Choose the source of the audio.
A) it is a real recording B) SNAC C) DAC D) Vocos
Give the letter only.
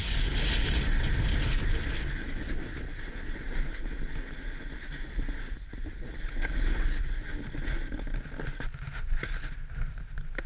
A